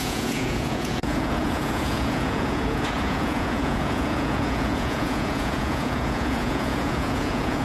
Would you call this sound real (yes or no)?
no